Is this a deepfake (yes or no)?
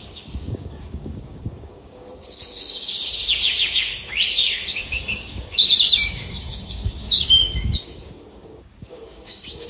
yes